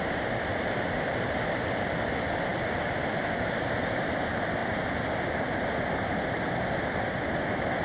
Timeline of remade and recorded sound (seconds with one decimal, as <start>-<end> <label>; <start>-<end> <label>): 0.0-7.8 recorded